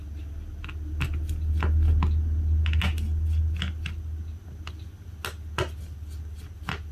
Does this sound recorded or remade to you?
recorded